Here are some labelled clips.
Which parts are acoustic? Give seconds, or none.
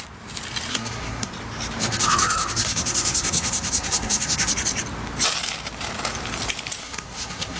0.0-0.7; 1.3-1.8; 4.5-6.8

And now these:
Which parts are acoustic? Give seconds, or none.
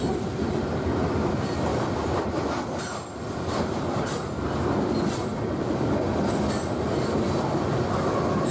0.0-1.7; 4.0-5.3; 5.9-8.5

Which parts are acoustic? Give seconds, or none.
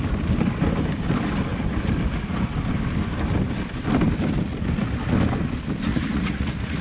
0.0-5.9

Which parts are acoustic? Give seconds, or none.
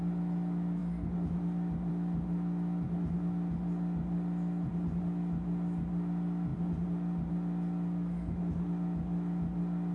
0.0-9.9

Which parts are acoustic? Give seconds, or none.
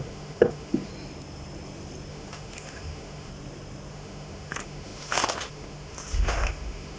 0.9-2.1; 3.3-3.9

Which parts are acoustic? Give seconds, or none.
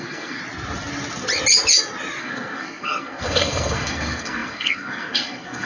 0.4-2.2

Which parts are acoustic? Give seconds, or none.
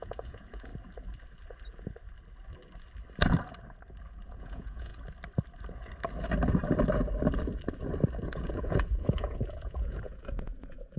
0.7-4.1; 4.9-8.1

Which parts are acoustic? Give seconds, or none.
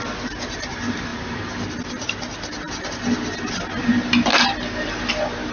0.0-5.5